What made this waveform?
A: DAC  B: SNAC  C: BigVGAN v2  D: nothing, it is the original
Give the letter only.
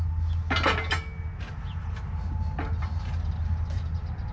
D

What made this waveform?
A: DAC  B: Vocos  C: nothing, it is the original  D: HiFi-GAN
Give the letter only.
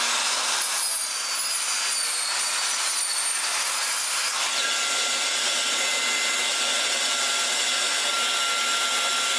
C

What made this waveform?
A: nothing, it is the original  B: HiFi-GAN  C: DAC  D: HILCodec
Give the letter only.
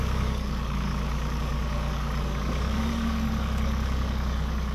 C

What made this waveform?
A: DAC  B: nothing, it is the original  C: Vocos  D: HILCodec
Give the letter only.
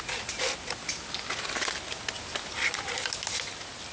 B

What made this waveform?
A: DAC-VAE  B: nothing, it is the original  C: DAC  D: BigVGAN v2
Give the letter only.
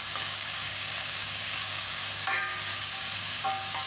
C